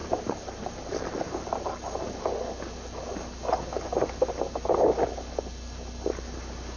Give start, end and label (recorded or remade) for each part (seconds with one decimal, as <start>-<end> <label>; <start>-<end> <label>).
0.0-1.9 remade; 1.9-6.8 recorded